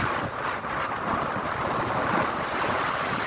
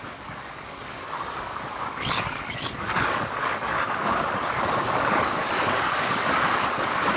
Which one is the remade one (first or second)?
second